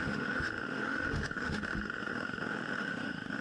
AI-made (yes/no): yes